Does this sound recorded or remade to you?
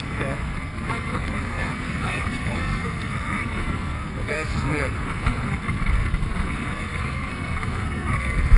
remade